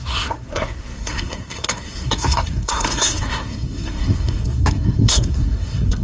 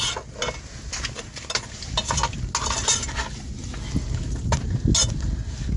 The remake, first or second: first